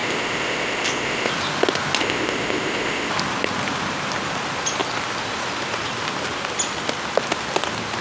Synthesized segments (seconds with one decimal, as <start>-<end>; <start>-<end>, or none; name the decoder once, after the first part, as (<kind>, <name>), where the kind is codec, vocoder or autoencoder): 0.0-1.3 (codec, ZipCodec); 2.0-3.1